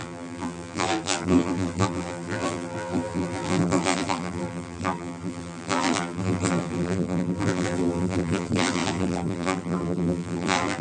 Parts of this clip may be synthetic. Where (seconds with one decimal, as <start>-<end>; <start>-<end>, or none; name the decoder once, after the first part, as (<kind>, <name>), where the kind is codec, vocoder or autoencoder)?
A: 0.0-10.8 (vocoder, BigVGAN v2)